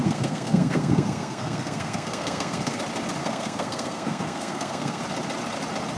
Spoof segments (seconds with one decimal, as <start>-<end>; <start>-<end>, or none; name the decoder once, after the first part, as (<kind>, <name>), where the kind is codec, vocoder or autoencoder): 0.0-2.8 (codec, SNAC); 3.2-5.0